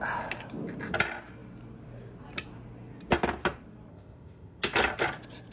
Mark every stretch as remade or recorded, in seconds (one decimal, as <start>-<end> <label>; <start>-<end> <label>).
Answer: 0.0-3.9 recorded; 3.9-4.6 remade; 4.6-5.5 recorded